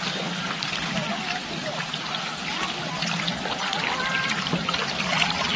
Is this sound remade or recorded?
recorded